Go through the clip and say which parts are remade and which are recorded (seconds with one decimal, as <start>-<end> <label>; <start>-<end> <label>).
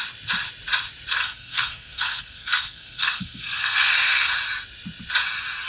0.0-1.2 recorded; 1.2-4.3 remade; 4.3-5.7 recorded